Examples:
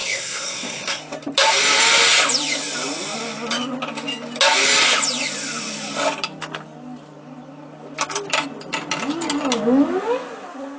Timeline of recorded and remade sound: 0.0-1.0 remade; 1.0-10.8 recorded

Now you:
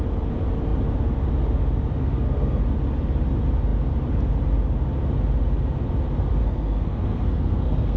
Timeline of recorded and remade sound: 0.0-2.0 recorded; 2.0-2.6 remade; 2.6-6.4 recorded; 6.4-8.0 remade

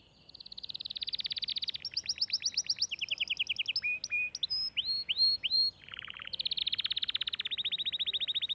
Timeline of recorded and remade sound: 0.0-8.5 recorded

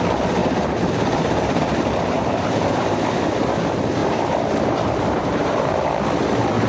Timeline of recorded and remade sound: 0.0-0.4 recorded; 0.4-3.0 remade; 3.0-4.0 recorded; 4.0-5.9 remade; 5.9-6.7 recorded

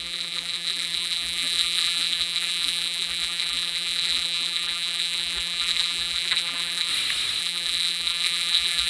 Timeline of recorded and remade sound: 0.0-6.9 remade; 6.9-7.4 recorded; 7.4-8.9 remade

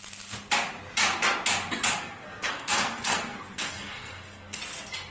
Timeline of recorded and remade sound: 0.0-2.0 recorded; 2.0-4.6 remade; 4.6-5.1 recorded

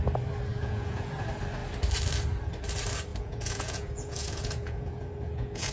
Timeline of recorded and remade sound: 0.0-0.5 recorded; 0.5-1.2 remade; 1.2-3.1 recorded; 3.1-5.7 remade